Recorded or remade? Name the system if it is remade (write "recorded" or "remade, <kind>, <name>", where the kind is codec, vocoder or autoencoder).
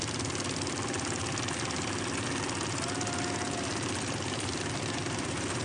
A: recorded